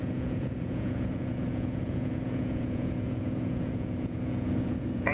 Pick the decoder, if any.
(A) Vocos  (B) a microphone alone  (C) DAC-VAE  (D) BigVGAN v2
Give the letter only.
A